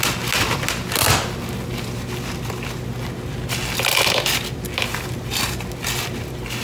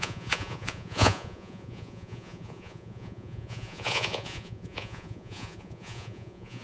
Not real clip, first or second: second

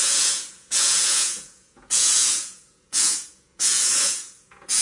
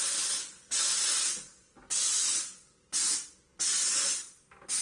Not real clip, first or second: first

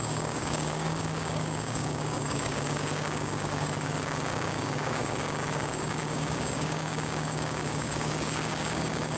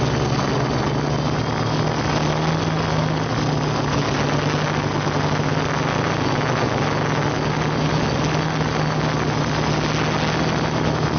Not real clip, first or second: first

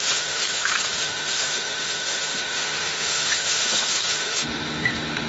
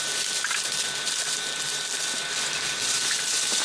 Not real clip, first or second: first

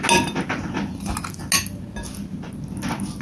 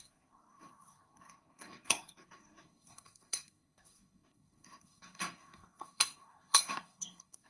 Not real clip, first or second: second